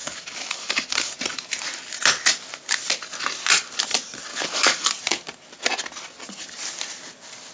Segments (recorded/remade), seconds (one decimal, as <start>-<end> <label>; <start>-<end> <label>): 0.0-1.2 remade; 1.2-4.3 recorded; 4.3-4.9 remade; 4.9-7.5 recorded